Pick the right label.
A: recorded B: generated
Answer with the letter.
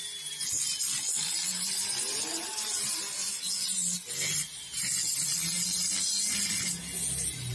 A